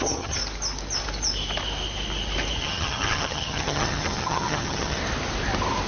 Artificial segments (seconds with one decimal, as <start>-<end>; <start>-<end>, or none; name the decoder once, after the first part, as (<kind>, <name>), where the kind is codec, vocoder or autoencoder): 0.0-0.4 (vocoder, HiFi-GAN); 2.6-5.0